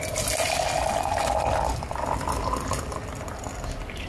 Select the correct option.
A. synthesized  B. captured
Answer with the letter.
B